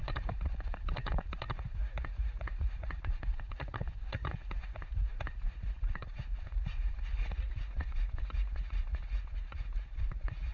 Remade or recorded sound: remade